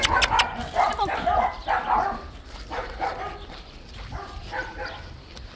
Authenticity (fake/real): real